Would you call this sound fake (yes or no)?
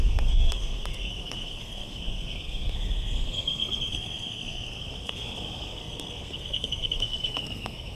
yes